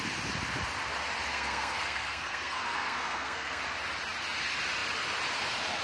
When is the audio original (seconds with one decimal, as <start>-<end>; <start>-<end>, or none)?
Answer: 0.0-1.3; 3.6-5.8